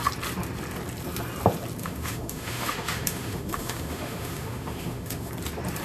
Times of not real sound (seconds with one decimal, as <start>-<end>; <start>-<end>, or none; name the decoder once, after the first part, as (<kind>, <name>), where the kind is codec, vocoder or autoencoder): 1.8-5.3 (autoencoder, DAC-VAE)